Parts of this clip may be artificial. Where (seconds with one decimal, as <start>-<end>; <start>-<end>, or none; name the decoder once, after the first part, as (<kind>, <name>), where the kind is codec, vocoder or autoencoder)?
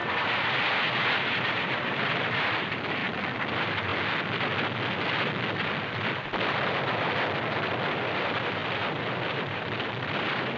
1.1-3.0 (vocoder, BigVGAN v2); 3.5-3.9; 7.6-8.6; 9.3-10.6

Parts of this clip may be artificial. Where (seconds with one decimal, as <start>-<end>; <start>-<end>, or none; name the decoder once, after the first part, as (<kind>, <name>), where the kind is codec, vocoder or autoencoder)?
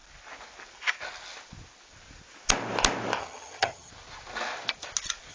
3.2-3.9 (vocoder, HiFi-GAN)